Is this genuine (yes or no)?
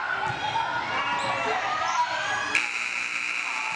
yes